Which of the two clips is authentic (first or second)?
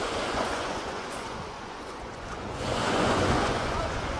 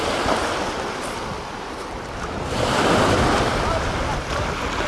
second